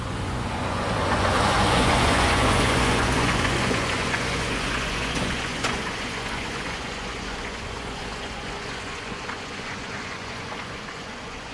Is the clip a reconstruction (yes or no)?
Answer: yes